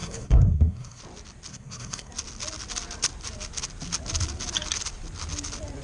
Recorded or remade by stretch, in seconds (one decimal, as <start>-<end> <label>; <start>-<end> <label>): 0.0-1.0 remade; 1.0-1.5 recorded; 1.5-2.1 remade; 2.1-5.8 recorded